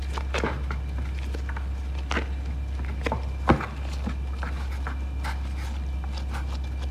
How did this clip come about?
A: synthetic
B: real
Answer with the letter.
B